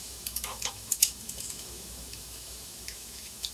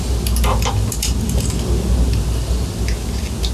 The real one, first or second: second